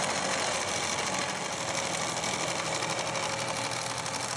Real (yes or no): yes